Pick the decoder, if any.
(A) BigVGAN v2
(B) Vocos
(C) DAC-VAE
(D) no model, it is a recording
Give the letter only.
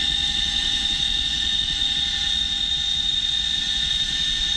B